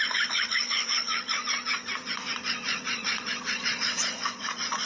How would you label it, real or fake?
fake